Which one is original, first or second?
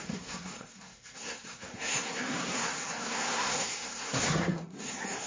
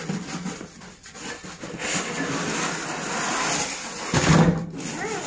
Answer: second